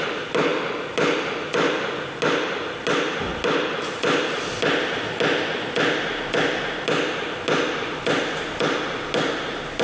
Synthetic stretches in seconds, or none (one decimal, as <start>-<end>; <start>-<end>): none